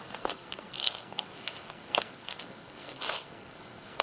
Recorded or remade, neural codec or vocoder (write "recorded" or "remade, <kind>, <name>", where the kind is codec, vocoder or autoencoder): remade, codec, SNAC